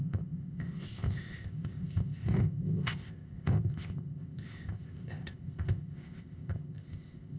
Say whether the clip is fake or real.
fake